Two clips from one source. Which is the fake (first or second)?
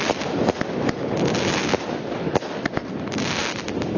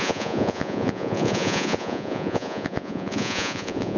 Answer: second